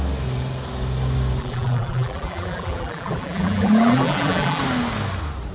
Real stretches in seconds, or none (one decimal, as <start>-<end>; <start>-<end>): 0.0-1.4; 4.6-5.5